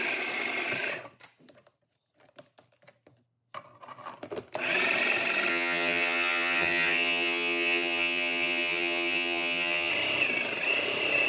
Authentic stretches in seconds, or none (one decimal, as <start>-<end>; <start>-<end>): 0.0-5.5; 9.9-11.3